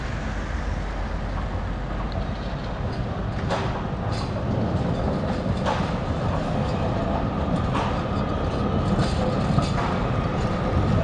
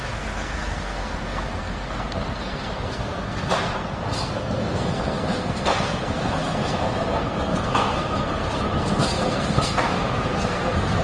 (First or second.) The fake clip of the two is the second